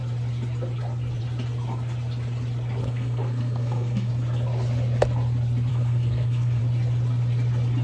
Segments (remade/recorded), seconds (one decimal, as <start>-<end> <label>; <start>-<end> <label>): 0.0-2.8 recorded; 2.8-4.1 remade; 4.1-5.7 recorded; 5.7-6.6 remade; 6.6-7.8 recorded